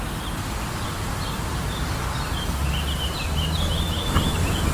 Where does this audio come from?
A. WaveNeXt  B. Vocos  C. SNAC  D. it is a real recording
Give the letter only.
D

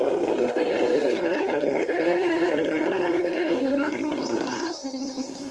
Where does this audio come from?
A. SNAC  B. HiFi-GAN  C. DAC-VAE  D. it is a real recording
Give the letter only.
A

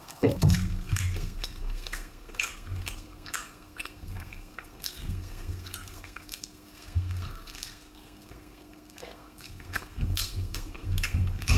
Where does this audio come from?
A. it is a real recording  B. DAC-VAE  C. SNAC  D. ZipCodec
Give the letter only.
C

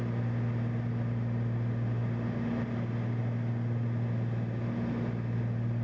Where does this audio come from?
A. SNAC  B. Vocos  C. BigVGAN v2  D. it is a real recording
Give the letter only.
D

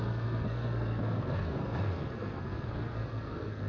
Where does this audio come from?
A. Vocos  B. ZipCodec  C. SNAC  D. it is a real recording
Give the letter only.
C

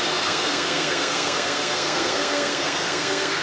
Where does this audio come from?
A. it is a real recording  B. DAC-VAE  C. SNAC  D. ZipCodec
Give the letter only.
C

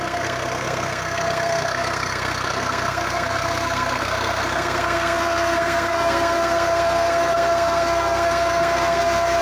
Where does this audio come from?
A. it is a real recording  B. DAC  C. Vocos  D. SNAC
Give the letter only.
D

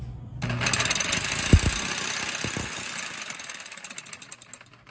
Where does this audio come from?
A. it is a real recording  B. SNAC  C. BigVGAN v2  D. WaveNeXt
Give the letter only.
A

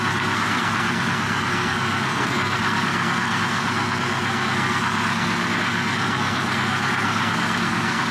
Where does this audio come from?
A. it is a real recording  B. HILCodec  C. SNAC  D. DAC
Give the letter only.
C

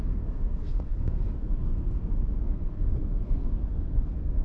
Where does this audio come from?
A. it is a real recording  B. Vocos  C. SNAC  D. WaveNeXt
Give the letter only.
C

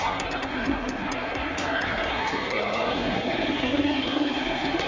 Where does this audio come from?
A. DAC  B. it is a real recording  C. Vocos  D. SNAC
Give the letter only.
D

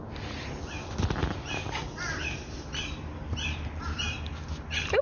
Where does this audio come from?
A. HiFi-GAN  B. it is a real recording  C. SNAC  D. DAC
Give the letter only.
B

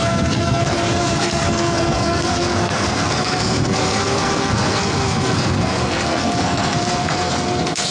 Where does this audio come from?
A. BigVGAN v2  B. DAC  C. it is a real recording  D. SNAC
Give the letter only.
D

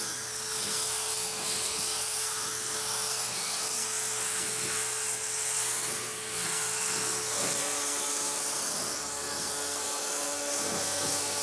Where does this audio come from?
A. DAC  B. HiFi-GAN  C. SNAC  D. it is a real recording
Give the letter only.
C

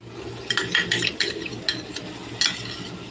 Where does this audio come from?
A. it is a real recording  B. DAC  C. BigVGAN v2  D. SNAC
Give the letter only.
A